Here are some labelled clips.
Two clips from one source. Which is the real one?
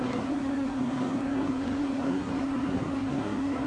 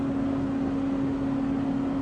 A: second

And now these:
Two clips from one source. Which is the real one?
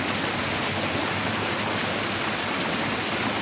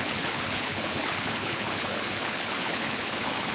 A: first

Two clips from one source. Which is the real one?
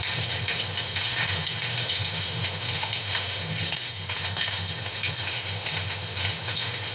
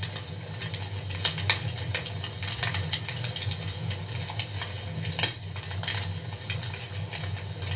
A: second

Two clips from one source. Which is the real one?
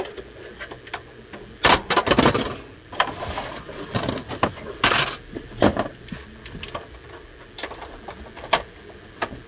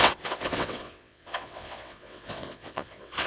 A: first